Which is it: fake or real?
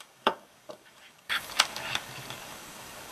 fake